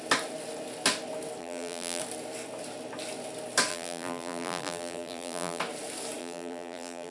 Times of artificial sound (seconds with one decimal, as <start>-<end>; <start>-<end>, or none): 1.4-2.0; 3.7-5.6; 6.2-7.1